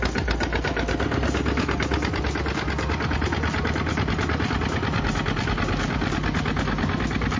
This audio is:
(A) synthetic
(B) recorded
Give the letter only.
B